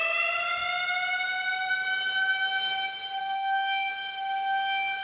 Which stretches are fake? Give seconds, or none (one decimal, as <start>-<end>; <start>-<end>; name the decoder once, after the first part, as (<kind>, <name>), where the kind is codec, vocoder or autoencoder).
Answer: 3.2-3.9 (codec, SNAC)